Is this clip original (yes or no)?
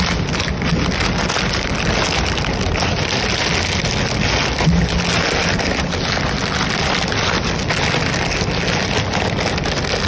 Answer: yes